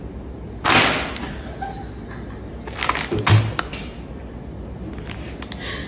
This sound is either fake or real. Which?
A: real